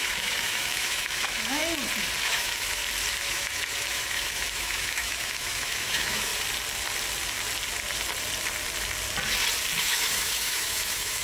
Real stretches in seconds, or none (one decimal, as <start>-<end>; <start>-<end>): 1.6-2.2; 2.8-3.3; 6.3-9.8